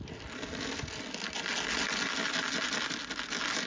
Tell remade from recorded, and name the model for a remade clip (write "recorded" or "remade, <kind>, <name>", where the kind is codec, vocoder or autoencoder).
recorded